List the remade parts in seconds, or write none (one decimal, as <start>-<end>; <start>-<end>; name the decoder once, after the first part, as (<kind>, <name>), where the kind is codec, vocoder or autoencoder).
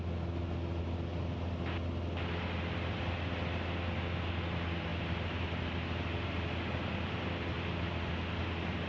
none